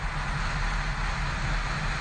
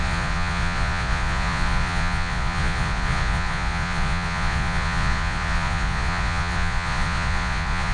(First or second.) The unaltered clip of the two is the first